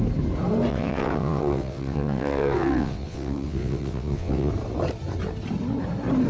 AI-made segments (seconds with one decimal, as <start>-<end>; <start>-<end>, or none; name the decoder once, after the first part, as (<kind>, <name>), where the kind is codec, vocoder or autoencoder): 0.7-4.5 (vocoder, WaveNeXt)